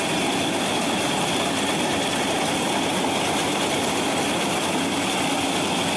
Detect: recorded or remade recorded